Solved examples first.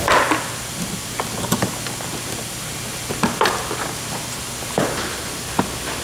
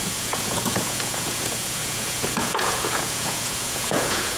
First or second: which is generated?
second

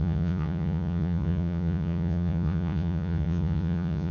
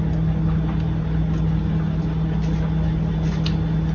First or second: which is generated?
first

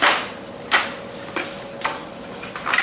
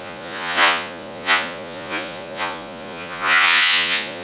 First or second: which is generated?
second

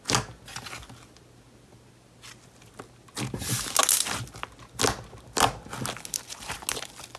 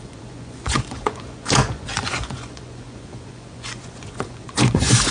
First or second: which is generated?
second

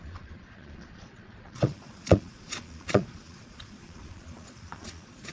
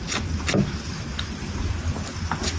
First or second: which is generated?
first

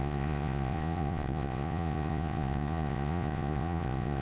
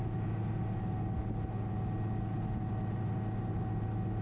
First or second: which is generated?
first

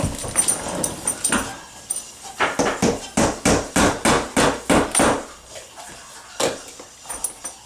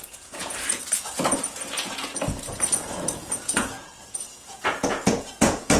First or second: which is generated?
second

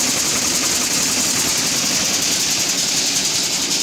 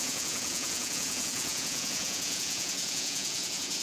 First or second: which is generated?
second